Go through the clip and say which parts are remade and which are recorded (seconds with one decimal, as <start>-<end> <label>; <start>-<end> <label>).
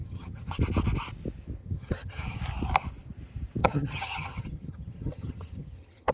0.0-0.6 remade; 0.6-1.6 recorded; 1.6-2.4 remade; 2.4-3.6 recorded; 3.6-6.1 remade